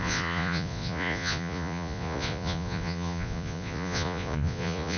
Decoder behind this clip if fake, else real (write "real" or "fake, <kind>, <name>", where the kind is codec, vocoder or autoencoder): fake, vocoder, Vocos